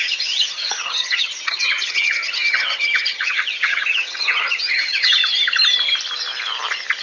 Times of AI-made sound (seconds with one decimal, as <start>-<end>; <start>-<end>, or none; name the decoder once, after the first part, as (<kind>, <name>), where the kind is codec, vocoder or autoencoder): 0.0-5.2 (vocoder, HiFi-GAN)